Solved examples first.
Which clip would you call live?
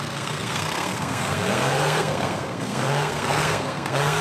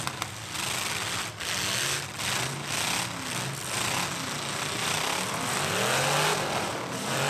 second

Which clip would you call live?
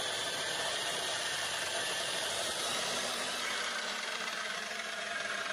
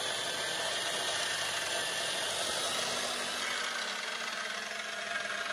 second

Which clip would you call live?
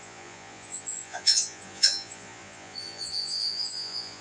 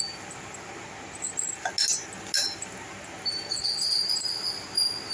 second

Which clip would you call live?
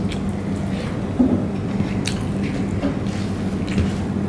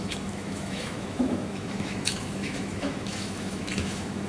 first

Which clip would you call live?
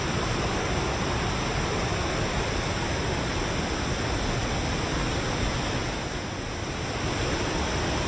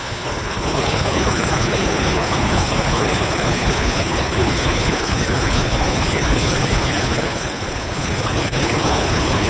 first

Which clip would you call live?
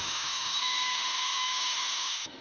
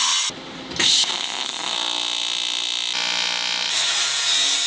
second